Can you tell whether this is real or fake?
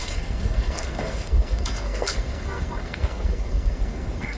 fake